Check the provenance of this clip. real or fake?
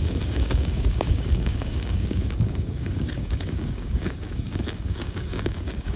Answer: fake